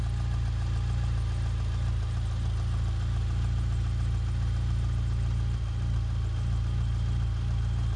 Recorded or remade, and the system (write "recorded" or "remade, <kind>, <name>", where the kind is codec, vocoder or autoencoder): recorded